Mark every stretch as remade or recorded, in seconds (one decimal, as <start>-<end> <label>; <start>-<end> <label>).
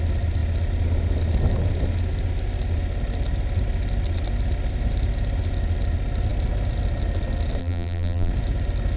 0.0-7.6 recorded; 7.6-8.3 remade; 8.3-9.0 recorded